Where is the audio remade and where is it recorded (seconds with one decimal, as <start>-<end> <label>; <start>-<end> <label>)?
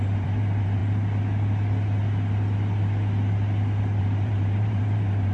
0.0-0.8 remade; 0.8-4.0 recorded; 4.0-5.3 remade